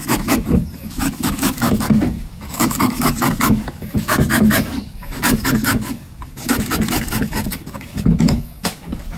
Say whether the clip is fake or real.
fake